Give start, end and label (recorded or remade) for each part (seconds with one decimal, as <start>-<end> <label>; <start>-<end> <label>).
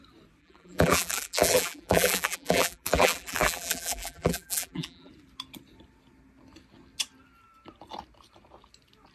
0.0-0.4 recorded; 0.4-5.1 remade; 5.1-9.1 recorded